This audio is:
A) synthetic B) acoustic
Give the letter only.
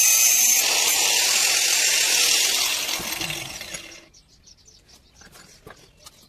B